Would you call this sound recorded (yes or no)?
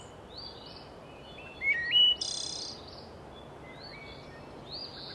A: yes